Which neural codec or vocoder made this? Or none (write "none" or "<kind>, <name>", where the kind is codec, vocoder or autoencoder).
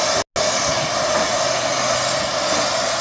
none